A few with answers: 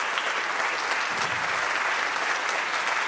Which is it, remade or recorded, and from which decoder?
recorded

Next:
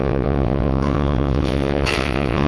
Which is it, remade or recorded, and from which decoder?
remade, vocoder, WaveNeXt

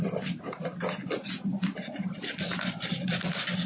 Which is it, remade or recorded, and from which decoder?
recorded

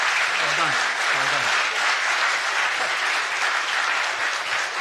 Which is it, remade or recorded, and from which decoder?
recorded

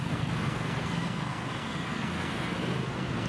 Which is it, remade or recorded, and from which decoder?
remade, codec, SNAC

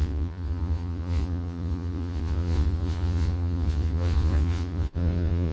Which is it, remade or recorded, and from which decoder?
remade, vocoder, Vocos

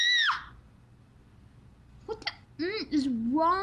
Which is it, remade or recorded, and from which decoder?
recorded